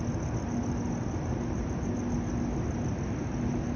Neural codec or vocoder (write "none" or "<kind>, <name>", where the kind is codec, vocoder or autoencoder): none